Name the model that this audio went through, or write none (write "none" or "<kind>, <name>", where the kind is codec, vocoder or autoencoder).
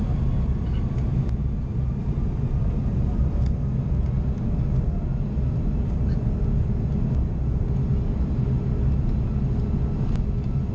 none